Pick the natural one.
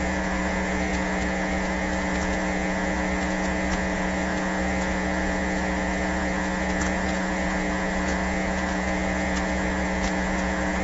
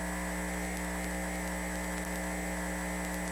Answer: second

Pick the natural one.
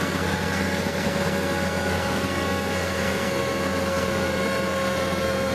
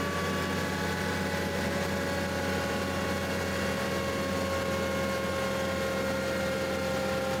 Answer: second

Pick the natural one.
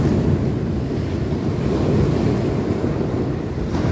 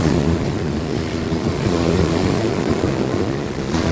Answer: first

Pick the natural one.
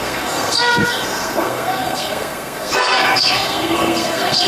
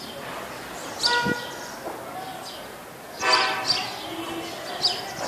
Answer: second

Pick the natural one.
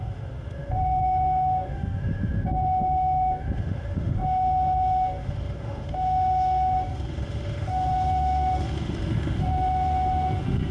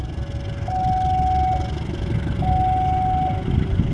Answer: second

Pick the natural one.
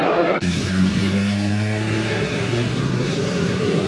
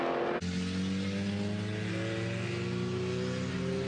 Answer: second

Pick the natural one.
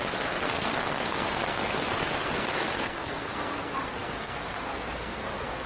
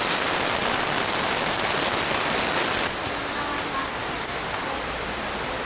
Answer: second